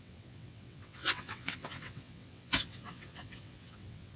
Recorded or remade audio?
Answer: remade